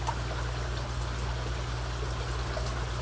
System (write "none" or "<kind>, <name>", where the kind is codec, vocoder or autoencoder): none